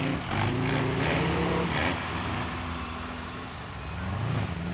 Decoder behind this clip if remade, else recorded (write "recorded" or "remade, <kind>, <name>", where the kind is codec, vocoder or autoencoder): recorded